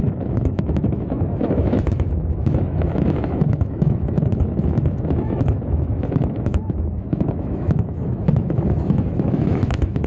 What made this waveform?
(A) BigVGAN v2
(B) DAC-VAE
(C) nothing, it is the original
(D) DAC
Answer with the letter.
B